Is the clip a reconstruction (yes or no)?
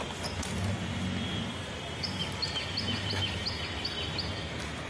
no